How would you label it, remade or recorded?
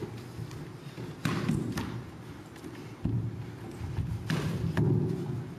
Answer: recorded